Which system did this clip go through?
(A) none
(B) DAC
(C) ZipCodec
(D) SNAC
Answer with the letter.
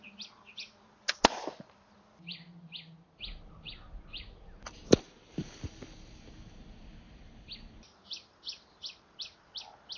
A